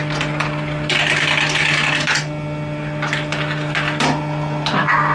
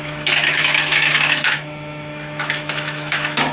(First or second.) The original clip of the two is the first